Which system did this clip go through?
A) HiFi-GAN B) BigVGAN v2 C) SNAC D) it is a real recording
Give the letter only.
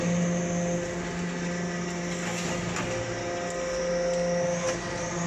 D